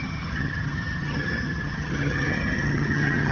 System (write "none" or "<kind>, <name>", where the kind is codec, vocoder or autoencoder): vocoder, HiFi-GAN